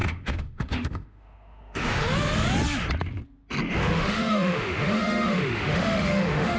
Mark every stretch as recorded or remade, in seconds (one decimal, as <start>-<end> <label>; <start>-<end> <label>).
0.0-2.0 remade; 2.0-3.8 recorded; 3.8-6.6 remade